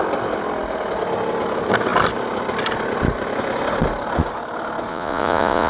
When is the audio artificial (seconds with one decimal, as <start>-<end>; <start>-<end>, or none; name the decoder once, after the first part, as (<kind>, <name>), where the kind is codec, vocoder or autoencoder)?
4.9-5.7 (vocoder, Vocos)